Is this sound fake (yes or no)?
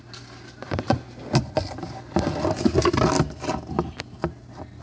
no